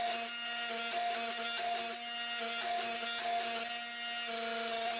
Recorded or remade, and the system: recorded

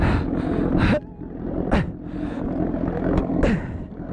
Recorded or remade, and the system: recorded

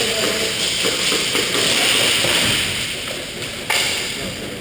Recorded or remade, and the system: recorded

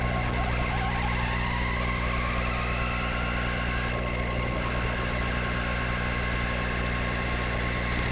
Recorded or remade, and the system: recorded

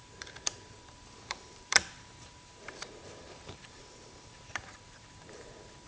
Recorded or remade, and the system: remade, vocoder, BigVGAN v2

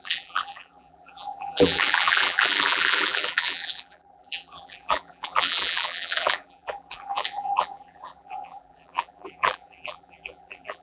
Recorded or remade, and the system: remade, vocoder, BigVGAN v2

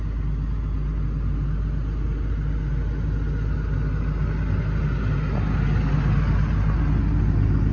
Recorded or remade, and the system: recorded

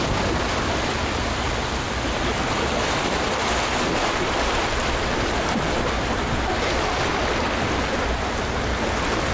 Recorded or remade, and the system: remade, vocoder, BigVGAN v2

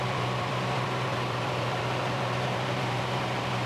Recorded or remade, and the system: remade, vocoder, BigVGAN v2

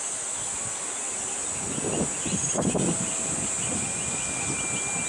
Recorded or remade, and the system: recorded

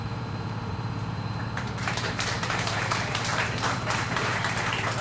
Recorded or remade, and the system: remade, vocoder, BigVGAN v2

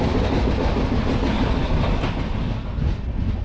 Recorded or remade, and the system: recorded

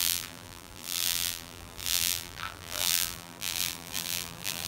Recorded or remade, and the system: remade, vocoder, BigVGAN v2